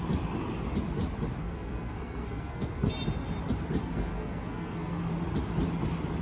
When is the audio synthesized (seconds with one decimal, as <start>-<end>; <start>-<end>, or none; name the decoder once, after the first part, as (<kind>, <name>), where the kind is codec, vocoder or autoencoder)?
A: 1.4-2.9 (codec, SNAC); 3.8-5.1